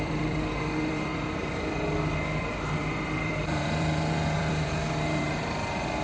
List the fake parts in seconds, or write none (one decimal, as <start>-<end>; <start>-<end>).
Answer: 0.0-6.0